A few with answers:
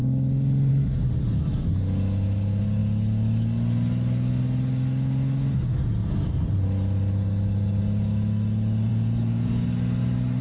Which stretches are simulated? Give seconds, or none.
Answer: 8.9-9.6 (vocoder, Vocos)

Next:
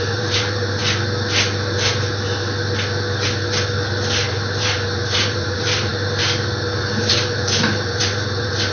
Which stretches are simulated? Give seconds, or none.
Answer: 0.0-0.8 (vocoder, BigVGAN v2); 4.3-5.9; 6.9-8.7

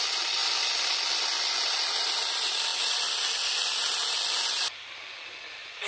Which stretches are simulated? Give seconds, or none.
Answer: none

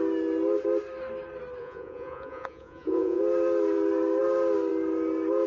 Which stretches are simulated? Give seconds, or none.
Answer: 1.6-3.2 (vocoder, Vocos)

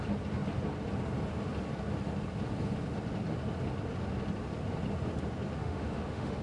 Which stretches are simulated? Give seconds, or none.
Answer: 5.6-6.4 (autoencoder, DAC-VAE)